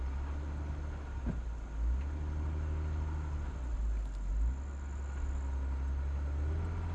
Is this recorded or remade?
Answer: recorded